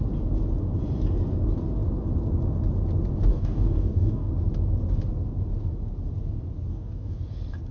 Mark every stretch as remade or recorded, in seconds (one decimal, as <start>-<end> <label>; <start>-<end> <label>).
0.0-3.3 recorded; 3.3-4.3 remade; 4.3-6.7 recorded; 6.7-7.2 remade; 7.2-7.7 recorded